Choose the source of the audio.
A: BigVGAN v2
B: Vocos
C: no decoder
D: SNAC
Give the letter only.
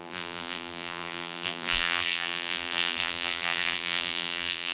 A